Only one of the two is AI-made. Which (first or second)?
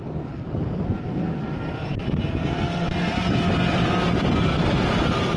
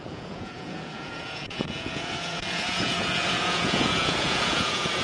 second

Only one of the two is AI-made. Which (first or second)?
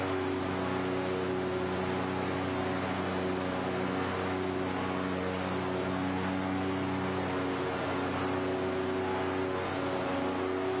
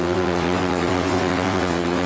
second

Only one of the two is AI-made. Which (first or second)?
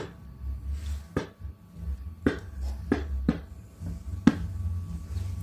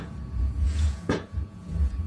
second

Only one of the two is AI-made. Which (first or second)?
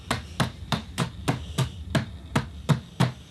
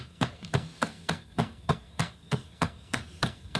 second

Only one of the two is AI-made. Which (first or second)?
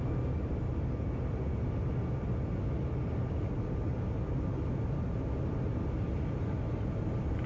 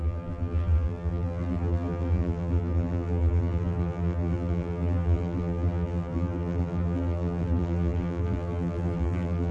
second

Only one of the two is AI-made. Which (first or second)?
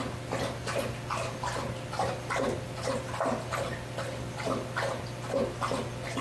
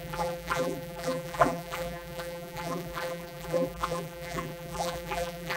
second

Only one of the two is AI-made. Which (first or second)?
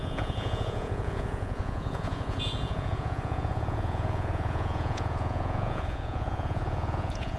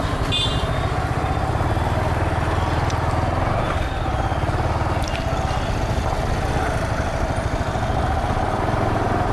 first